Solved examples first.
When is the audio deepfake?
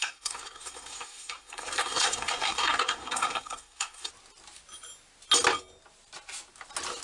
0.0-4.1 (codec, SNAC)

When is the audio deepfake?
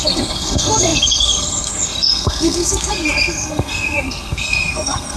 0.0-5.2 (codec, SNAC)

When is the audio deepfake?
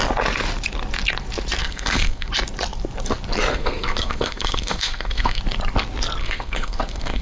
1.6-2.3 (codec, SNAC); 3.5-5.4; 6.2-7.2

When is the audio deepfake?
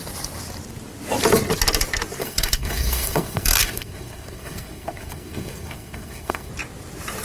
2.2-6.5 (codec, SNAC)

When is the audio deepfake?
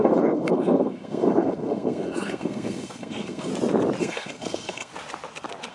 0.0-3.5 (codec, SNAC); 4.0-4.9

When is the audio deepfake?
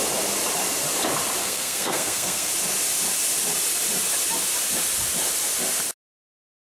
1.4-2.5 (codec, SNAC)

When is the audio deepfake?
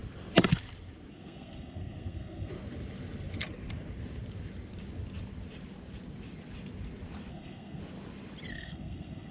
1.1-2.5 (codec, SNAC); 7.3-7.8; 8.5-9.3